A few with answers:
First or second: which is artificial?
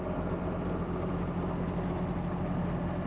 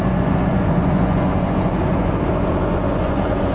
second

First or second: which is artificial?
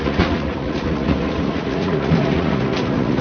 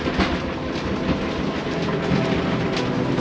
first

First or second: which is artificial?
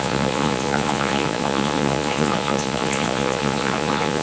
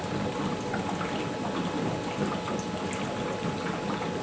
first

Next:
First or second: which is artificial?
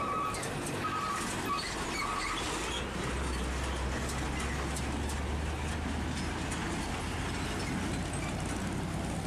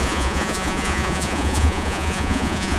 second